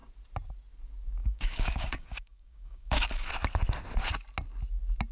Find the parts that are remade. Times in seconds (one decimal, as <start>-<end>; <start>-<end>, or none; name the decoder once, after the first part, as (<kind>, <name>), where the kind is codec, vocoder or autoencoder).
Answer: 1.2-3.3 (codec, DAC)